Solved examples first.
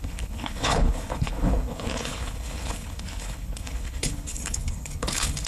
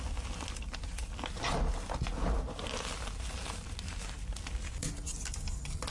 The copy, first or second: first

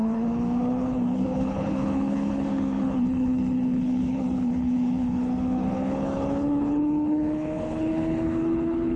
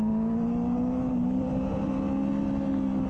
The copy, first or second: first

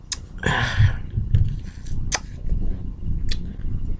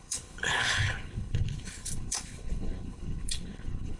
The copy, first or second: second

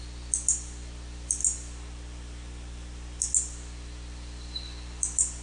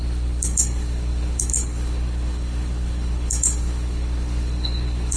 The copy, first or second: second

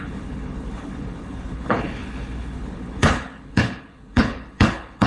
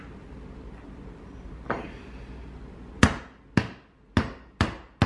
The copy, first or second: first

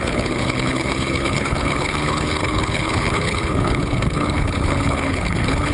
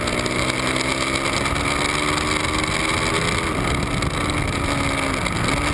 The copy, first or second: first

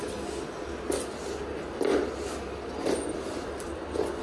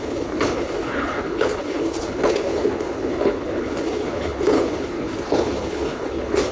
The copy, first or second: second